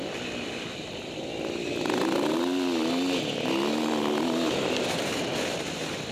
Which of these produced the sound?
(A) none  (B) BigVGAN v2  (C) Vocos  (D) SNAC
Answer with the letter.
A